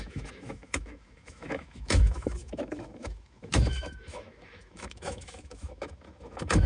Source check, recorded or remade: remade